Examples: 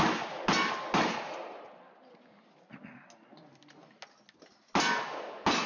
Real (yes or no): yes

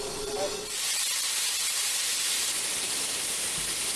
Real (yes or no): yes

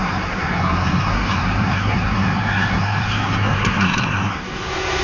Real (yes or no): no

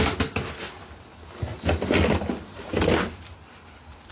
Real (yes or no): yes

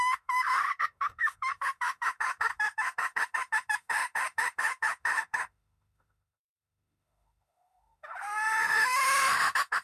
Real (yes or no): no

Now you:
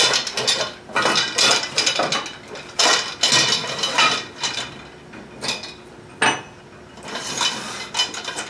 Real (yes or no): yes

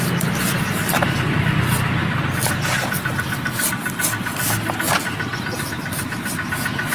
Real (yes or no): yes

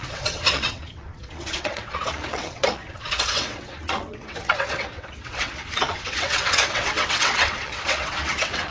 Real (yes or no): no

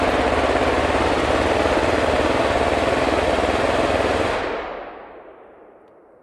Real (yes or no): yes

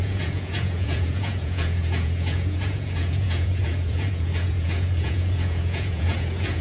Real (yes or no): no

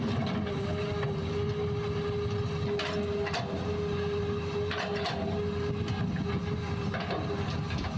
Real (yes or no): yes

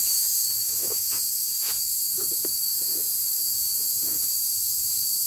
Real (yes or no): no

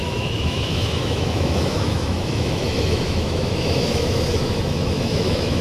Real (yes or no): no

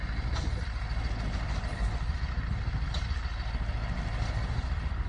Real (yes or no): yes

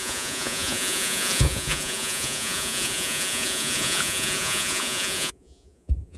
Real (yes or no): no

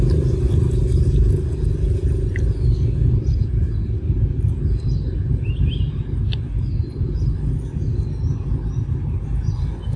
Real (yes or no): yes